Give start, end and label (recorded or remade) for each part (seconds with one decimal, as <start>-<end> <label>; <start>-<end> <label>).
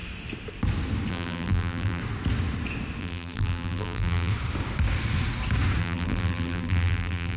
0.0-1.1 recorded; 1.1-2.0 remade; 2.0-3.0 recorded; 3.0-4.3 remade; 4.3-5.8 recorded; 5.8-7.4 remade